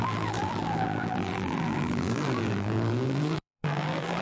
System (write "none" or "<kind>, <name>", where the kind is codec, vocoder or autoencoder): vocoder, BigVGAN v2